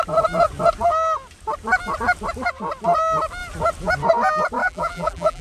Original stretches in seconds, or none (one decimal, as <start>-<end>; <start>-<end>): 0.0-4.6